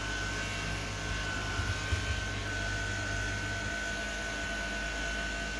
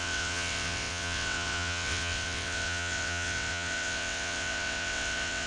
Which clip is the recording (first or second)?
first